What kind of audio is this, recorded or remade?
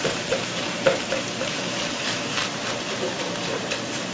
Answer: remade